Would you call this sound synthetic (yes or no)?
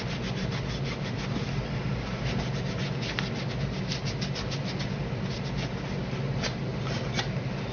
no